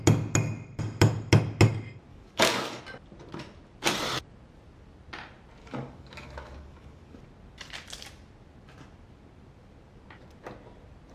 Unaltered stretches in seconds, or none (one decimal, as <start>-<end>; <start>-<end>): 0.0-2.1; 2.8-5.6; 7.2-11.1